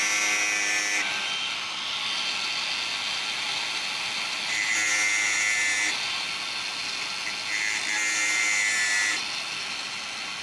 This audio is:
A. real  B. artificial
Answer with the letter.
A